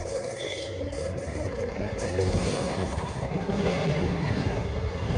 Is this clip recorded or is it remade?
remade